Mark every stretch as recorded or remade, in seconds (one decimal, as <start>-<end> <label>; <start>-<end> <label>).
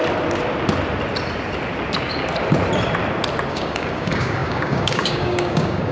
0.0-3.5 recorded; 3.5-5.9 remade